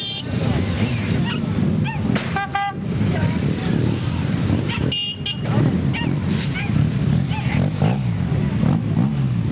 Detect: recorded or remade recorded